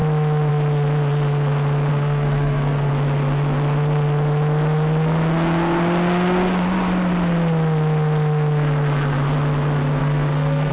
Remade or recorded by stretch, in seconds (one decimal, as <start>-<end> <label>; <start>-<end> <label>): 0.0-1.9 recorded; 1.9-2.9 remade; 2.9-10.0 recorded; 10.0-10.7 remade